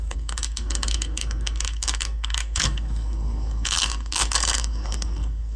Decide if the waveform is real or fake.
fake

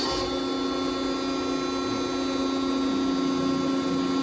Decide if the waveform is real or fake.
real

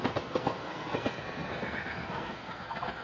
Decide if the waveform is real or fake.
fake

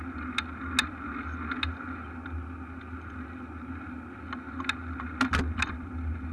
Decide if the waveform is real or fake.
real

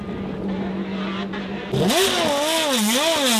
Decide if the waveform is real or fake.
real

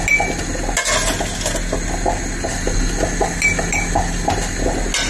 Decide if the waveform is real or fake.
real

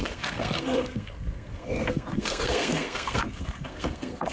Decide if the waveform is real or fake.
fake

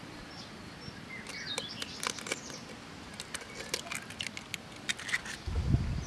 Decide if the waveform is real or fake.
real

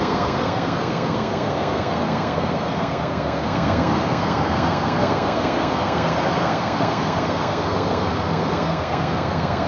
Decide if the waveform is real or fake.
fake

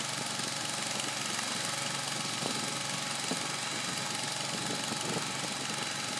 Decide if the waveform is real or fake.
real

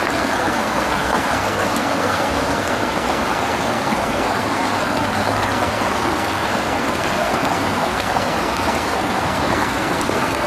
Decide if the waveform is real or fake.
fake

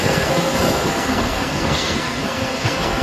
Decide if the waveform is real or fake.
fake